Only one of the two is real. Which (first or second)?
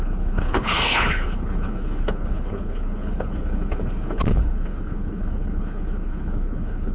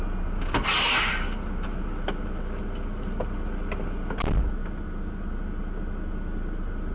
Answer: second